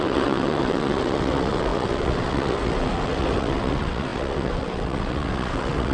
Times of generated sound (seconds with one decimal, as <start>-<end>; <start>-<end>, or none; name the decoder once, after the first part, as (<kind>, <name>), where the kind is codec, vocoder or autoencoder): 0.0-5.9 (vocoder, WaveNeXt)